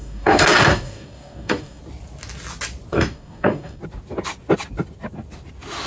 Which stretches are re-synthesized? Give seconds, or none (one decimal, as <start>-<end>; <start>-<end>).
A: 0.0-1.8; 2.9-3.8